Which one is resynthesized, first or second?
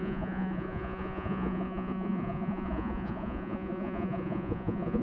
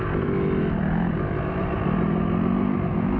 first